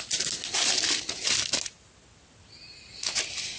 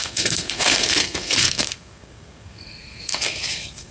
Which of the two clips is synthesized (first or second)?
second